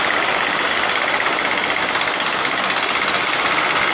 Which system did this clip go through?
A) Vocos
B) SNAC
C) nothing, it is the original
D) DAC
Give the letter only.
C